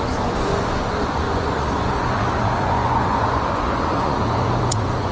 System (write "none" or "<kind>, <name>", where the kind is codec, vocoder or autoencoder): vocoder, Vocos